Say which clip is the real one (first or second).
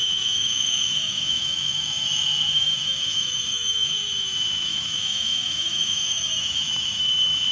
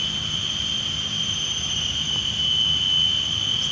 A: second